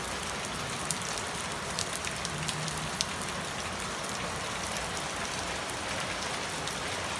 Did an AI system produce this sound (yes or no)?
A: yes